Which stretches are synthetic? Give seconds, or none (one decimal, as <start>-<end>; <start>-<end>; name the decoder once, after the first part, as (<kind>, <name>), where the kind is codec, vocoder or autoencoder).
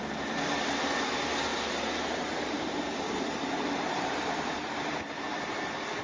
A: 1.5-5.1 (vocoder, BigVGAN v2)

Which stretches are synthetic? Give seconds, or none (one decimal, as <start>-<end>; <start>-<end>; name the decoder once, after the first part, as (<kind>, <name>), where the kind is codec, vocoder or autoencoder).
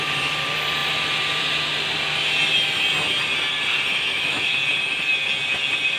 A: 3.9-4.6 (autoencoder, DAC-VAE)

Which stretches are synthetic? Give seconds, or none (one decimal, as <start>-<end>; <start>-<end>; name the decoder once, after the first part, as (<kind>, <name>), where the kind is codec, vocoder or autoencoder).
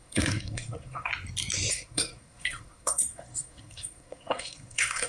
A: 0.0-1.1 (codec, SNAC); 1.7-5.1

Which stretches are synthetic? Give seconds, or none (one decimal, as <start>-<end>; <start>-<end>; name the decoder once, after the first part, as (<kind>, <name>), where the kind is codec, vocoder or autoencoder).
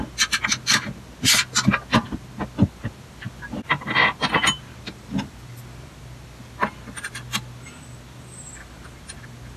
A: none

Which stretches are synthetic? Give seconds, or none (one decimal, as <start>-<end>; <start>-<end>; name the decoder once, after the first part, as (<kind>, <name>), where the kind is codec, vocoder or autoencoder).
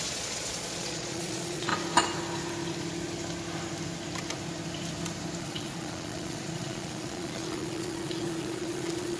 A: 0.0-1.7 (vocoder, Vocos); 5.4-9.2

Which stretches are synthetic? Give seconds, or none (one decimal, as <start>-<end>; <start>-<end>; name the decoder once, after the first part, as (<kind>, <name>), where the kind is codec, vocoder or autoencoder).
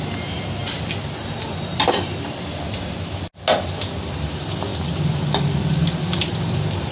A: none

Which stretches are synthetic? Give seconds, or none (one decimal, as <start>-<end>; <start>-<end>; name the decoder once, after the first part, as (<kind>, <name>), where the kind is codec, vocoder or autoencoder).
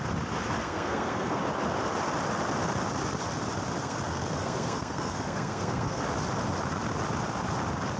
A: 0.6-1.4 (codec, SNAC); 3.8-6.0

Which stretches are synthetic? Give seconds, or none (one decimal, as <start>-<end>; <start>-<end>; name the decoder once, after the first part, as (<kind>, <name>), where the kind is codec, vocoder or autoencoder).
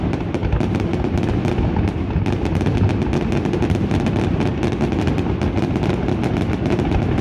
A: none